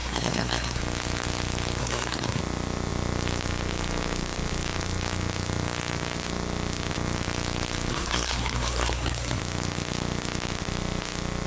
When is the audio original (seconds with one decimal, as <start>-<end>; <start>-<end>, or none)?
0.8-1.8; 2.4-7.9; 9.4-11.5